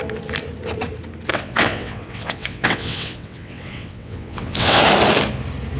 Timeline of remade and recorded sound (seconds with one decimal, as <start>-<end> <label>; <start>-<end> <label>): 0.0-1.3 recorded; 1.3-4.8 remade; 4.8-5.8 recorded